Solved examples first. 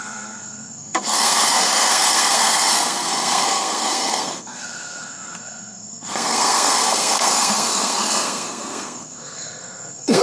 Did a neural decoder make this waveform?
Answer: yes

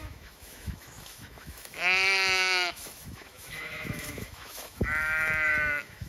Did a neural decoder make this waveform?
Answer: yes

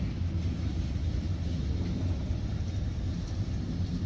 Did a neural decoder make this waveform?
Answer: no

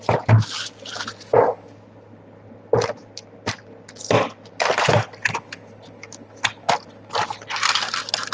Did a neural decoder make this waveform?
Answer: no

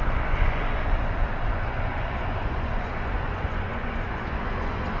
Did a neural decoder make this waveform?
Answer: yes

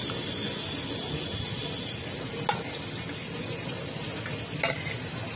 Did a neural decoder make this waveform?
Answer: no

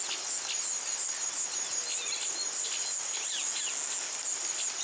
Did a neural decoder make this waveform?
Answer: no